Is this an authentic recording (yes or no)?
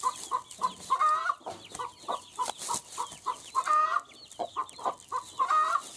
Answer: yes